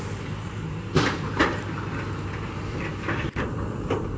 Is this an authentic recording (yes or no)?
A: no